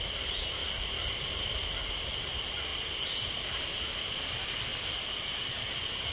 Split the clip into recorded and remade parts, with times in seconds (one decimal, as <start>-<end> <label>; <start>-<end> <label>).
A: 0.0-0.6 recorded; 0.6-1.7 remade; 1.7-2.7 recorded; 2.7-4.0 remade; 4.0-4.7 recorded; 4.7-5.4 remade; 5.4-6.1 recorded